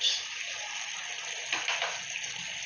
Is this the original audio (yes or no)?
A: yes